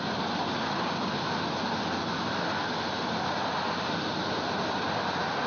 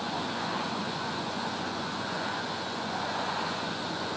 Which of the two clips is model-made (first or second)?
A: second